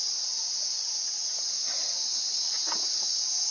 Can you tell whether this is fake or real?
real